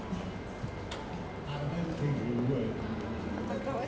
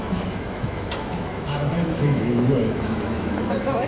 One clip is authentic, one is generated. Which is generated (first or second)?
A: second